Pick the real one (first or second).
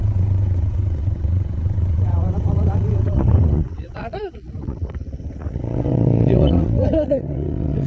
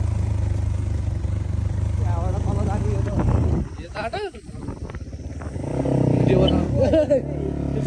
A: second